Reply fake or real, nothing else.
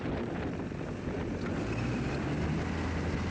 real